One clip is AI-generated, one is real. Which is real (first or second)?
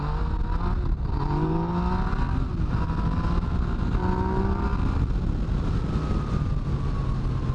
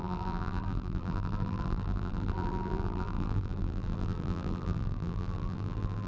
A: first